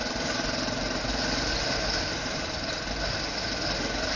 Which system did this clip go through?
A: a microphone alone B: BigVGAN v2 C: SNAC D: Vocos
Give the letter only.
A